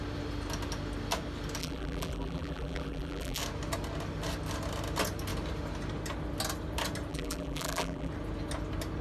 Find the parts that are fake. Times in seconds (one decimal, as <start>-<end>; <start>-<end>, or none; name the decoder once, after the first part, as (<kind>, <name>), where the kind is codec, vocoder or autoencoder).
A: 1.6-3.4 (vocoder, BigVGAN v2); 7.1-8.1